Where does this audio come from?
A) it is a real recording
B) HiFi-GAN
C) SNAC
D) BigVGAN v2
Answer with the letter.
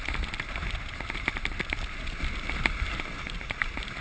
A